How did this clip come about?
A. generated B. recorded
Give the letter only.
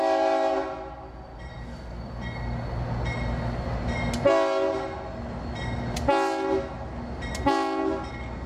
B